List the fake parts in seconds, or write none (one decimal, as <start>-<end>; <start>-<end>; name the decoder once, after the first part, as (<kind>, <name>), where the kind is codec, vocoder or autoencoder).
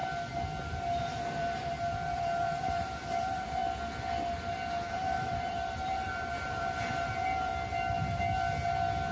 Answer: 1.0-3.6 (vocoder, BigVGAN v2); 4.9-7.5